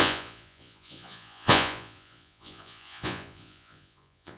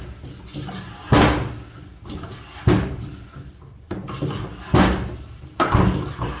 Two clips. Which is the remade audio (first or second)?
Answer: first